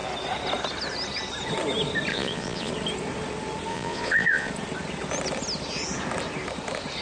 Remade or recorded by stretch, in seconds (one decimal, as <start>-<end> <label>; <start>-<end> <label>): 0.0-2.1 recorded; 2.1-2.7 remade; 2.7-3.7 recorded; 3.7-4.5 remade; 4.5-7.0 recorded